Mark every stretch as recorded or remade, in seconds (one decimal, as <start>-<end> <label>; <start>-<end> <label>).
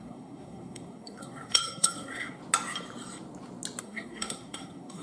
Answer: 0.0-2.4 remade; 2.4-3.8 recorded; 3.8-5.0 remade